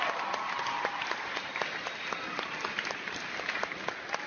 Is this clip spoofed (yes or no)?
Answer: no